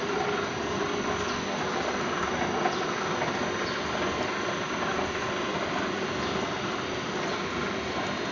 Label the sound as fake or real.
real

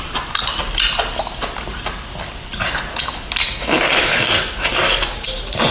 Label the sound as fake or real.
real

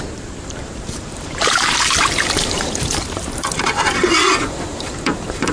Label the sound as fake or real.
fake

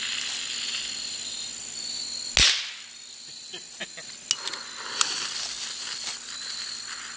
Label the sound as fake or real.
real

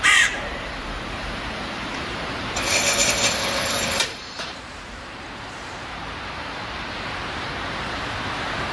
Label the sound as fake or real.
fake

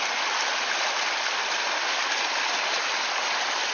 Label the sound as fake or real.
real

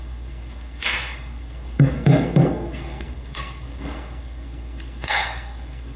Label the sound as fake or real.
fake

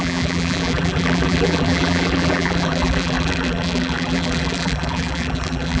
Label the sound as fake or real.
fake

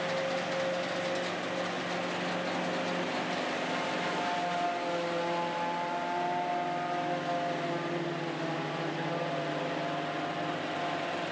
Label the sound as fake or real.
real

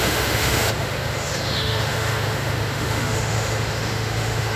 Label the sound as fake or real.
fake